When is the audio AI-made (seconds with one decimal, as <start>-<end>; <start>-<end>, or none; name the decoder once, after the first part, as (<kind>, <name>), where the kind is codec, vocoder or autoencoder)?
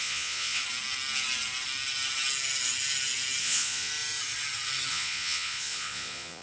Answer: 0.0-0.6 (vocoder, Vocos); 3.4-3.9; 4.9-6.4